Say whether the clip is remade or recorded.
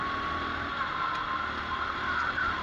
recorded